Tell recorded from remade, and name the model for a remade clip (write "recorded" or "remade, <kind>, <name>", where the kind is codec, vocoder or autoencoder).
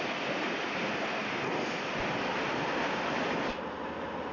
recorded